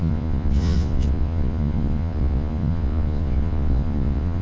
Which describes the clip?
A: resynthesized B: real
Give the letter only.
A